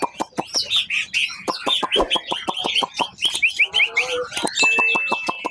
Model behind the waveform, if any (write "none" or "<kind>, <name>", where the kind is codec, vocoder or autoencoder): none